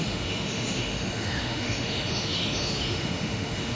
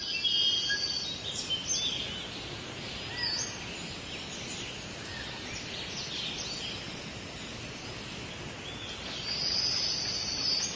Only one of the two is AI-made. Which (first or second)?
first